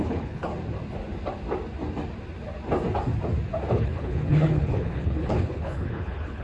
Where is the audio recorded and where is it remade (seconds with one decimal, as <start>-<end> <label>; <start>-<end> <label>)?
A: 0.0-0.5 remade; 0.5-3.7 recorded; 3.7-6.4 remade